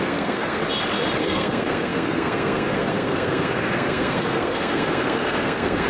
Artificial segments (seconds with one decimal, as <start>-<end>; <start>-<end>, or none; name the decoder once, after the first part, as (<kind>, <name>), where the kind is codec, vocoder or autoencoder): 0.0-0.6 (codec, SNAC); 1.2-5.9